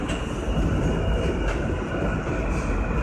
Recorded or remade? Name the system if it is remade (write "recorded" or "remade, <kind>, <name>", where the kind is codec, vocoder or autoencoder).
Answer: recorded